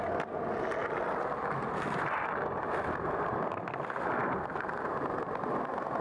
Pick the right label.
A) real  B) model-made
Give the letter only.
A